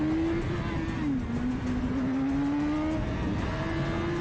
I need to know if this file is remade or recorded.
recorded